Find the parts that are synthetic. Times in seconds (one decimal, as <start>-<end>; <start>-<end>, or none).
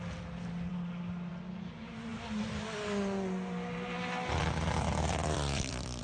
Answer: none